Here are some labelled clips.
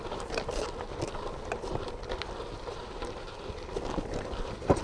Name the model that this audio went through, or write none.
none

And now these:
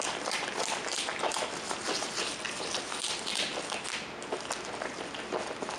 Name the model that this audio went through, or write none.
none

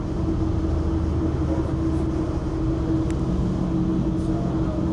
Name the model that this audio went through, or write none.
none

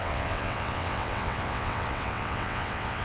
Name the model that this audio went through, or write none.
vocoder, WaveNeXt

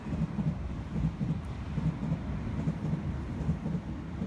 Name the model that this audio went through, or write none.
none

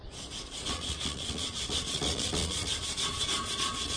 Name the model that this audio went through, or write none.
vocoder, Vocos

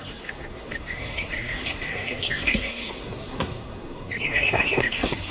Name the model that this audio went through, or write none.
codec, SNAC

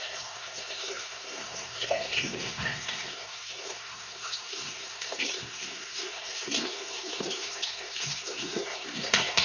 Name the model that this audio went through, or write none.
codec, SNAC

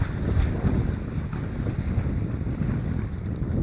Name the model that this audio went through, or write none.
none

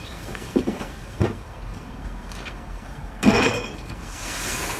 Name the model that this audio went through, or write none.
codec, SNAC